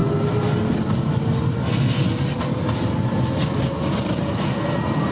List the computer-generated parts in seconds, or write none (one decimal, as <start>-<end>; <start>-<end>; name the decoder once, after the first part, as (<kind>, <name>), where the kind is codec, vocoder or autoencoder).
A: none